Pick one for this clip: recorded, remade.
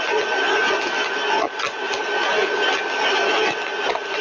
recorded